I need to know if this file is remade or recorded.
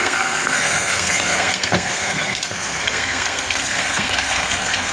remade